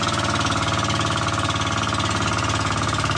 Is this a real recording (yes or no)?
yes